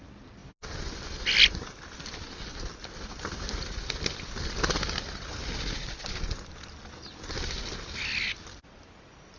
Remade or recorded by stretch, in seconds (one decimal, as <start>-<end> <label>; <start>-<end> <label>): 0.0-9.4 recorded